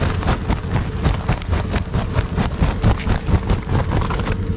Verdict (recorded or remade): recorded